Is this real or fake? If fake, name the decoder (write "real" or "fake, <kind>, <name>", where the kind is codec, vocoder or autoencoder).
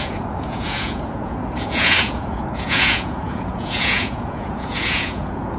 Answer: fake, vocoder, Vocos